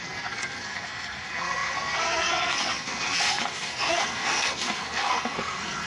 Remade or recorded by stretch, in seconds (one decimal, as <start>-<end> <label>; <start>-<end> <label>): 0.0-5.9 remade